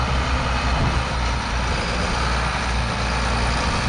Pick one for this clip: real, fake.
real